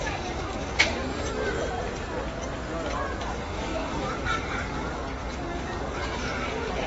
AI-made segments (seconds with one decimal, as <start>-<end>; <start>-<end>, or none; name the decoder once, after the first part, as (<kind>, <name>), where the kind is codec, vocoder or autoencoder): 0.0-1.0 (codec, DAC); 3.2-6.9